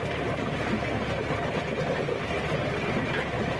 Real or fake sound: real